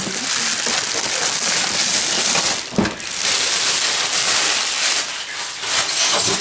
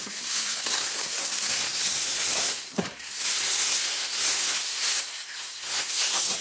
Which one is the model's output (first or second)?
second